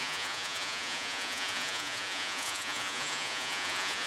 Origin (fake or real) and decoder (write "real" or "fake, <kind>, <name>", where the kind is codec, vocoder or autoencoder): fake, vocoder, Vocos